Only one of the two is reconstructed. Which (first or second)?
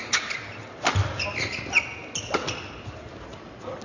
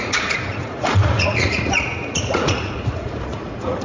second